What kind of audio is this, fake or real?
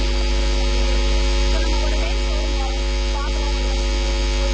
real